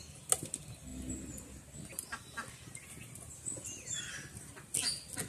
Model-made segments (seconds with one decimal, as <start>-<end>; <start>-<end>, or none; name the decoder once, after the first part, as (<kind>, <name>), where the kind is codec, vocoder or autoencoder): none